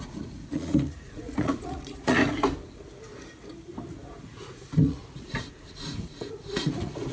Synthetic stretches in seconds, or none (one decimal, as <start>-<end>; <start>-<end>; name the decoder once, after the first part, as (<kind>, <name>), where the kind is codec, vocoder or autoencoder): 0.0-2.2 (vocoder, Vocos); 3.9-7.1

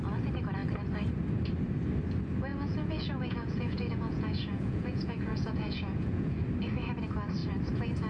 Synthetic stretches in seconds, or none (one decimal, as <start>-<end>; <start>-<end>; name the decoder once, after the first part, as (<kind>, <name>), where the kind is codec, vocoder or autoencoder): 2.5-6.4 (vocoder, Vocos)

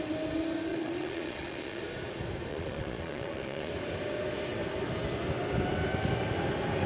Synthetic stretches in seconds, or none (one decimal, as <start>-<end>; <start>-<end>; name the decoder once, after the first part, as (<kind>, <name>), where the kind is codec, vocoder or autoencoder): 0.7-1.8 (vocoder, Vocos); 2.5-3.7

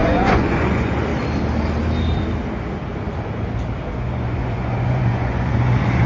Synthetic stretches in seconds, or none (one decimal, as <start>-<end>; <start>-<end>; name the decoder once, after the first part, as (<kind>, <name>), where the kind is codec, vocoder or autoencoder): 0.0-1.1 (vocoder, Vocos); 3.9-6.1

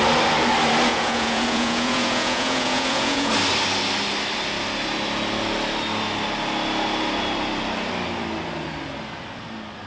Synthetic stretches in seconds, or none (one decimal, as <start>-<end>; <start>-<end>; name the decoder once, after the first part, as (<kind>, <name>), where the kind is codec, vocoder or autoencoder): 0.9-3.3 (vocoder, Vocos)